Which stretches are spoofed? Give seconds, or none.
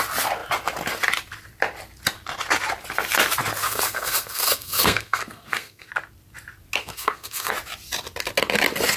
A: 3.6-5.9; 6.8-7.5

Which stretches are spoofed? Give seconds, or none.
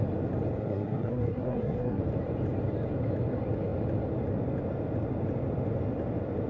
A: 0.6-2.0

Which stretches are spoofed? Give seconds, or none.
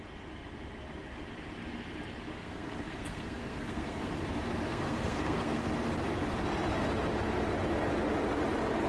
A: 2.3-4.1; 4.7-5.7